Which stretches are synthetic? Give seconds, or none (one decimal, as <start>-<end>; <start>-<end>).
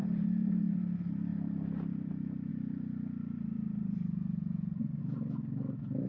0.0-0.8; 1.3-2.1; 2.5-5.0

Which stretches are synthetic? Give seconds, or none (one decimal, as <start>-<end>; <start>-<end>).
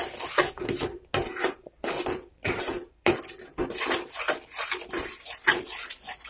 2.4-3.2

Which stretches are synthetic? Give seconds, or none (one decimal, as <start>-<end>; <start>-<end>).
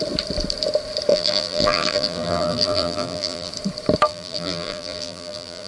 1.1-3.5; 4.1-5.7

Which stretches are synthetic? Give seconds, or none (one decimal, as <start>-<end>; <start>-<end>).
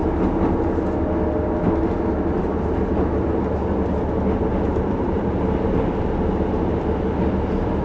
4.5-6.0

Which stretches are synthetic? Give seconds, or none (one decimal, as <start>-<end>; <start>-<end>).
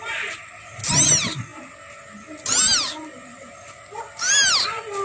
none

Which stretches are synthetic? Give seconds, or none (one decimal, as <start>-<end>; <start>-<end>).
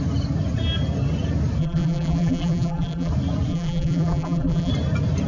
1.6-3.1; 3.5-4.7